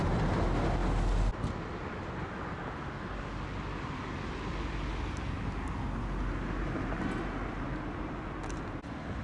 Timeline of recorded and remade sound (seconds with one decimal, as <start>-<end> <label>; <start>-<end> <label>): 0.0-9.2 recorded